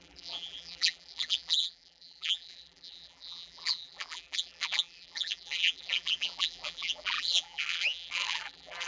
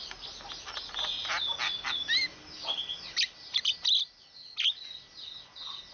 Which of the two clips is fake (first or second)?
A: first